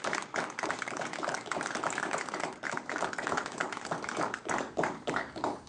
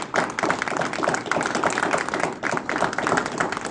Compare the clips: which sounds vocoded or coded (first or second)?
first